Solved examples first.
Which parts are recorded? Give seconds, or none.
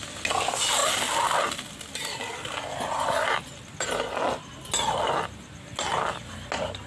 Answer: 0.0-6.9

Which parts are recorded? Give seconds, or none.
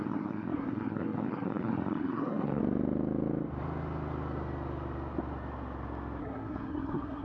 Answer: 2.6-6.2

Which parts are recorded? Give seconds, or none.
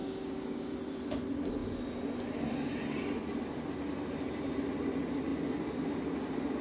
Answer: 0.7-6.6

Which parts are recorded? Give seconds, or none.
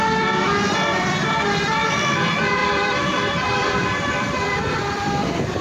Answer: none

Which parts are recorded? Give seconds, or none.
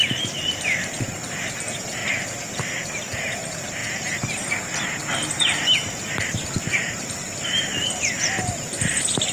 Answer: 3.8-4.5; 5.0-6.0